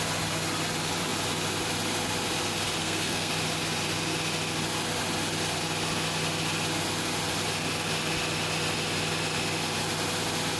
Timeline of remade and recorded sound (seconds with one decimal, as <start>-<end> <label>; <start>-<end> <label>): 0.0-2.8 recorded; 2.8-3.3 remade; 3.3-10.6 recorded